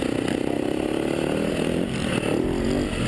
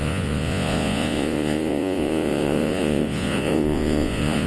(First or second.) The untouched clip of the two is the first